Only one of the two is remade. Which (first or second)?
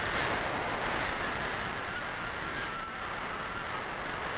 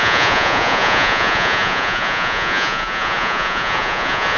second